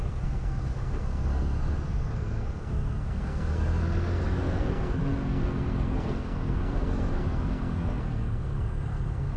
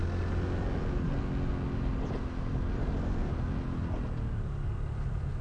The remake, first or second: first